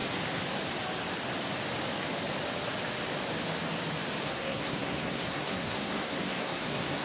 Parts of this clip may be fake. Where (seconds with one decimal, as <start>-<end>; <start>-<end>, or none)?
4.2-7.0